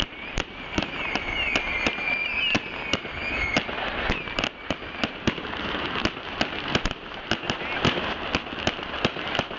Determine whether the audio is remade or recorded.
recorded